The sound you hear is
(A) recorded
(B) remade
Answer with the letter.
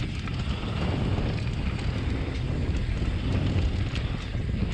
A